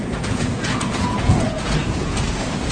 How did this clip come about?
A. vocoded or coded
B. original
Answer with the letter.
A